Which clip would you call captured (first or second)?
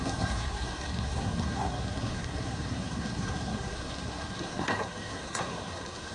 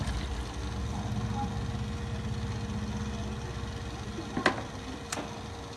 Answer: second